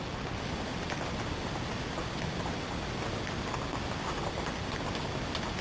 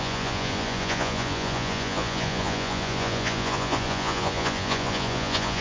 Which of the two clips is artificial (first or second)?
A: second